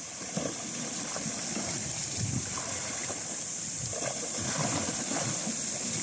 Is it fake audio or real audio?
real